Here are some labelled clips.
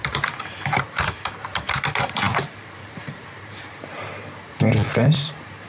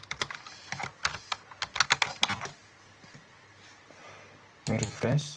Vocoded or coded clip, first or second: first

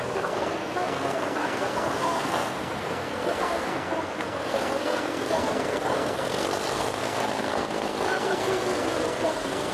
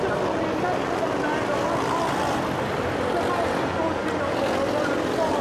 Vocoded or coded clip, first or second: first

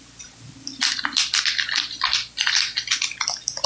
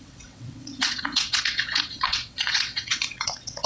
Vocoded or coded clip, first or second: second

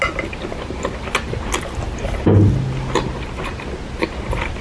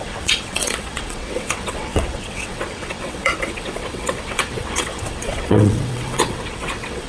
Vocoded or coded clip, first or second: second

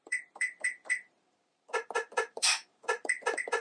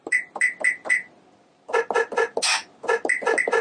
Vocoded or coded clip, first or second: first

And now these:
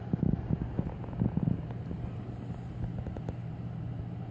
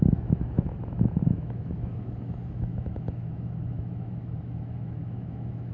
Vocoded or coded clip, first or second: second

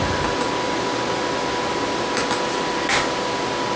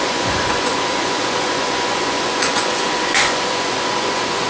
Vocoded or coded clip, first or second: second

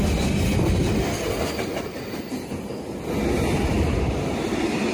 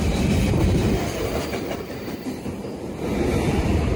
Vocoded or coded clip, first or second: second